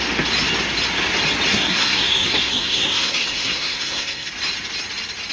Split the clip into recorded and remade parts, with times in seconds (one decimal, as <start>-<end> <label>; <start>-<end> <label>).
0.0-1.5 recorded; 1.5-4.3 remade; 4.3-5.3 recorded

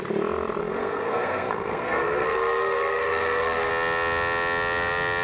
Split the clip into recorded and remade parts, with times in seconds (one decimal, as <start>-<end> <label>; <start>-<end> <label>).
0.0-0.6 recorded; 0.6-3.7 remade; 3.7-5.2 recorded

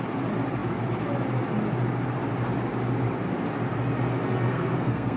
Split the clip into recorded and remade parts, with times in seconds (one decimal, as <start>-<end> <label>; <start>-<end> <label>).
0.0-4.5 recorded; 4.5-5.2 remade

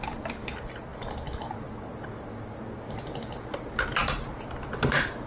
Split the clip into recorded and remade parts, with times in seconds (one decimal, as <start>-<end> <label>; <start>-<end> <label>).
0.0-5.3 recorded

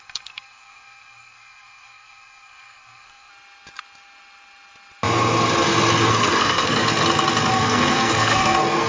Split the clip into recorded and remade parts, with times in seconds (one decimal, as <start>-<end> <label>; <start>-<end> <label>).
0.0-3.3 remade; 3.3-6.1 recorded; 6.1-6.8 remade; 6.8-7.5 recorded; 7.5-8.9 remade

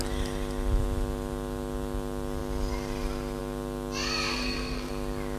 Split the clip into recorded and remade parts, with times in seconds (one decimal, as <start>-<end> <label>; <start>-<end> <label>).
0.0-4.3 recorded; 4.3-4.9 remade; 4.9-5.4 recorded

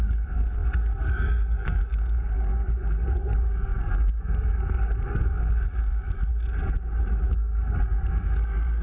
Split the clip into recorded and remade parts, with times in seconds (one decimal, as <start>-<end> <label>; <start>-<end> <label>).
0.0-6.3 remade; 6.3-7.3 recorded; 7.3-8.8 remade

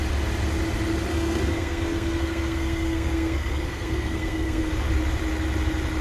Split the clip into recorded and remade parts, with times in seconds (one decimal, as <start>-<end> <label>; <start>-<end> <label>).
0.0-1.1 recorded; 1.1-4.7 remade; 4.7-6.0 recorded